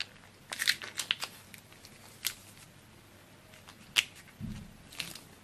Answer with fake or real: real